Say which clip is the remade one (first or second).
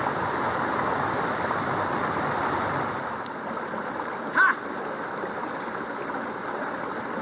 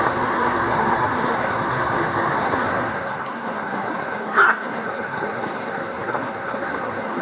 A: second